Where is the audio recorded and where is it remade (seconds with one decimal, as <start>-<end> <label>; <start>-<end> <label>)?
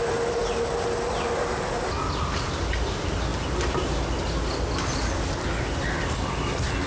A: 0.0-6.9 recorded